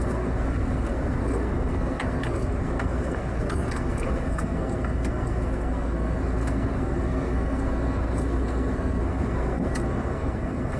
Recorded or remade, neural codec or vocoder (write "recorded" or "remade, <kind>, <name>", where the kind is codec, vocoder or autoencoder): remade, codec, SNAC